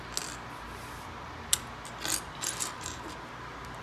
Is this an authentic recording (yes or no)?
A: yes